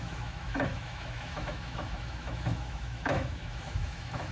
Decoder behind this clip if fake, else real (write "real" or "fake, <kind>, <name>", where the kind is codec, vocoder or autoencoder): fake, autoencoder, DAC-VAE